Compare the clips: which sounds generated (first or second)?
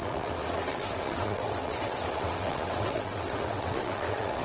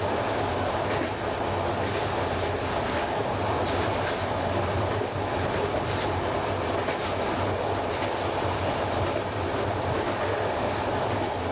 first